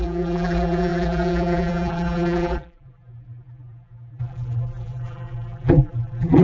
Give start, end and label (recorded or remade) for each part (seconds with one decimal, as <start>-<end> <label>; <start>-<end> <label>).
0.0-6.4 remade